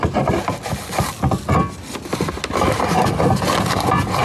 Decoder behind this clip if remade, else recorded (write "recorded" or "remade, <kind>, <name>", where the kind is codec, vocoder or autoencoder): recorded